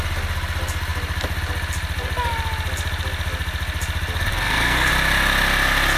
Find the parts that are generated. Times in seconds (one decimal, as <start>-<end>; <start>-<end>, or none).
4.3-4.9